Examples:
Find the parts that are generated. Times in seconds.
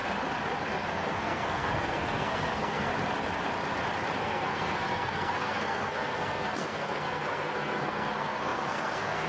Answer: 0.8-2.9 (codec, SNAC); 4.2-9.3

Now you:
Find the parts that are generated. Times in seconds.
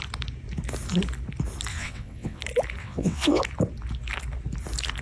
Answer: 1.7-2.4 (vocoder, WaveNeXt); 2.8-3.4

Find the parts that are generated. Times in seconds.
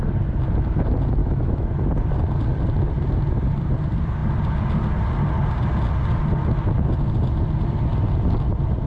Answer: 1.2-1.7 (autoencoder, DAC-VAE)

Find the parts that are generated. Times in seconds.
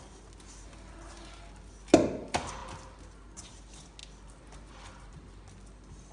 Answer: none